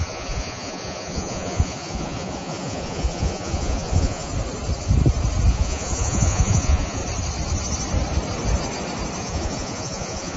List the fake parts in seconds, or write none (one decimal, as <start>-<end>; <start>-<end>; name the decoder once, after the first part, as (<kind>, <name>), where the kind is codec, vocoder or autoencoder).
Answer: 0.0-4.3 (vocoder, Vocos); 5.5-7.0; 9.2-10.4